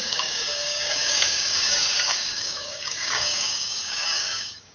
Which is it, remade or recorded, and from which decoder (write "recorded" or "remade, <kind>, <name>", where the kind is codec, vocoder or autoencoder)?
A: remade, codec, DAC